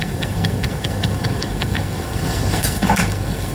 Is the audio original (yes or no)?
no